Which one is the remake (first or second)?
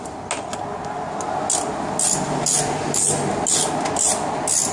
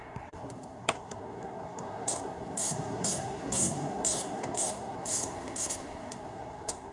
second